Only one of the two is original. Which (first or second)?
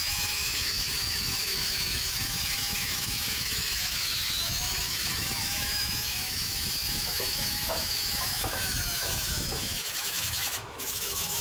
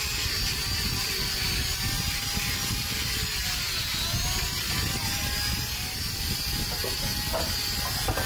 second